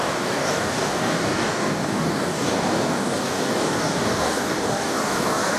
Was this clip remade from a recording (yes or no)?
yes